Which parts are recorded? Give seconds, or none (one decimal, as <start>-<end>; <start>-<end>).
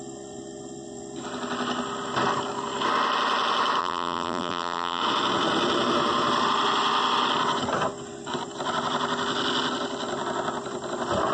0.0-3.8; 5.0-11.3